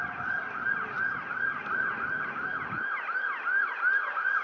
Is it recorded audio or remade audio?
recorded